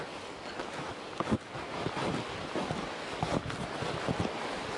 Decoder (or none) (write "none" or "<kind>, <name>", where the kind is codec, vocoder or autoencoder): none